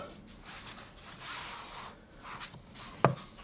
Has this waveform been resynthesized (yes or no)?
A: no